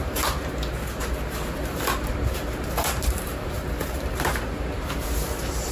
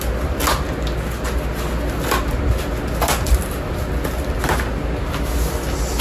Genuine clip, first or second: second